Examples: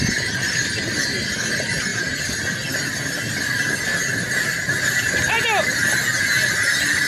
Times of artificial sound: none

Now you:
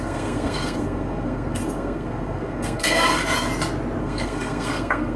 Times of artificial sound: 0.0-3.2; 4.0-5.2